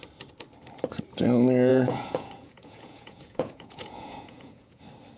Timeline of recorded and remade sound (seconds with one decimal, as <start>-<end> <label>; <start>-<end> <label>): 0.0-1.7 recorded; 1.7-4.8 remade; 4.8-5.2 recorded